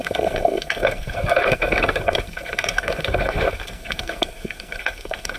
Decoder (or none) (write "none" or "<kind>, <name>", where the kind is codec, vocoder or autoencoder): codec, SNAC